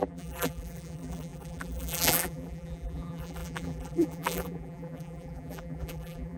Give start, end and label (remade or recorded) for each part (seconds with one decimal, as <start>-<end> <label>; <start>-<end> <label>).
0.0-6.4 remade